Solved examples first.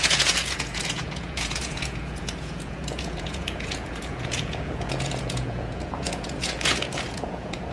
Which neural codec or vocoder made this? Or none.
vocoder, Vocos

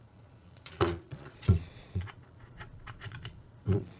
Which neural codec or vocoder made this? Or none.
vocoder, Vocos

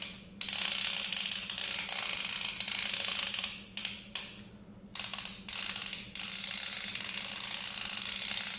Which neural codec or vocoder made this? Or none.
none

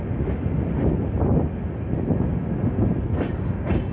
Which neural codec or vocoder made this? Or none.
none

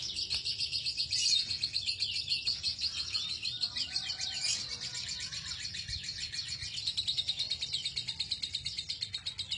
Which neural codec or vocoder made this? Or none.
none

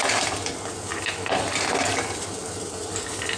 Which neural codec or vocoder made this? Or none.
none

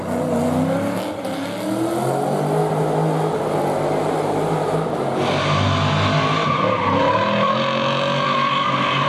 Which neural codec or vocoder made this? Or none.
none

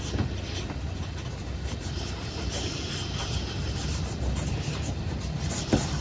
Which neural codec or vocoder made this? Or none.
none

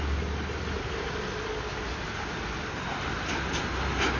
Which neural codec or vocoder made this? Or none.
none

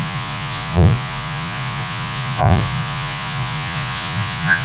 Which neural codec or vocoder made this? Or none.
vocoder, Vocos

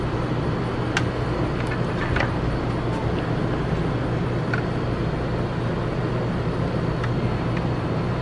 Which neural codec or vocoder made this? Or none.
none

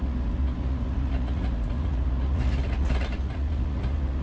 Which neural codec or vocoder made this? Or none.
vocoder, Vocos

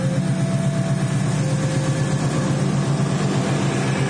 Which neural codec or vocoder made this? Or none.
none